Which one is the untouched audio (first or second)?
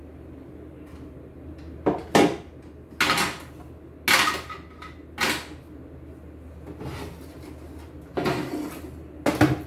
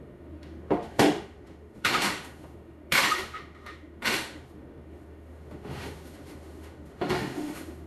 first